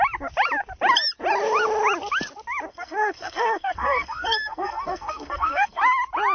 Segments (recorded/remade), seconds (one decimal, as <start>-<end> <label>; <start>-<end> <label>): 0.0-2.7 recorded; 2.7-5.8 remade; 5.8-6.3 recorded